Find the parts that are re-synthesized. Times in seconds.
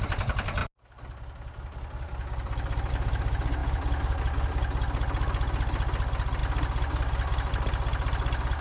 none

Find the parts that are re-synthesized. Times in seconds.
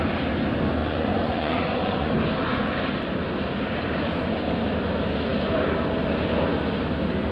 0.8-2.1 (vocoder, Vocos)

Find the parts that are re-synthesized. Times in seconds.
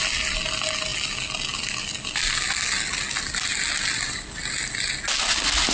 none